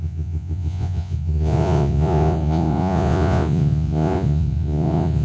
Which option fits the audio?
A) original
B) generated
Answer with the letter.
B